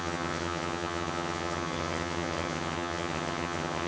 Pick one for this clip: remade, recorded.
remade